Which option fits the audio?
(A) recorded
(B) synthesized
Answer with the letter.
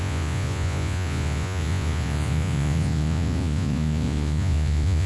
B